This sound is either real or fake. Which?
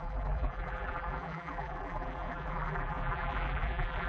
fake